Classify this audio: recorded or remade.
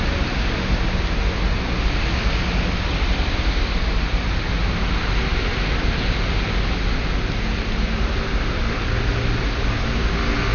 recorded